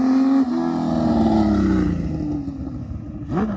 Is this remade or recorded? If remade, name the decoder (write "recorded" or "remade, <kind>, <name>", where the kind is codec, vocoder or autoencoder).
recorded